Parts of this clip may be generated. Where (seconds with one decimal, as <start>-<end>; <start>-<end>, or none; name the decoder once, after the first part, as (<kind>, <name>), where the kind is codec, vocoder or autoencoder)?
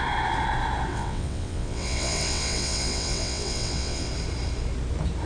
0.9-4.1 (vocoder, WaveNeXt)